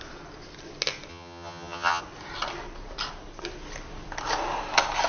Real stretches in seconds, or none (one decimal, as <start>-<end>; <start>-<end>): 0.0-1.1; 2.0-5.1